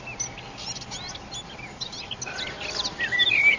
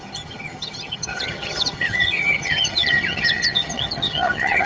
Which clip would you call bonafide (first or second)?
first